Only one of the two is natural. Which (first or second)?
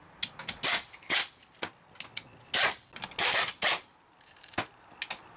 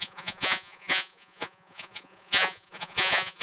first